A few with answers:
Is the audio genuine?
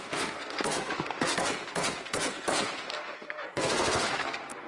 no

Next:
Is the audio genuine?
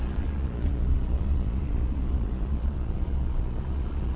no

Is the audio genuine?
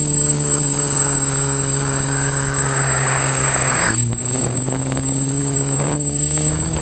no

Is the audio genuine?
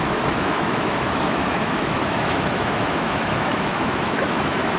no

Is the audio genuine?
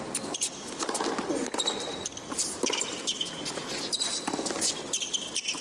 yes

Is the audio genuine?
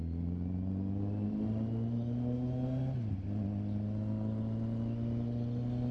yes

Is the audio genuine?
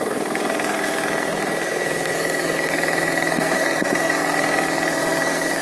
no